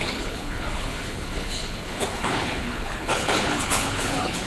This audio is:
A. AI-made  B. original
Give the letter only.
A